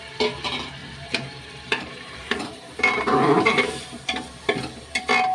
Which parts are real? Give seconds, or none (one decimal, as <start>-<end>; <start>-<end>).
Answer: 0.0-0.8; 4.0-5.3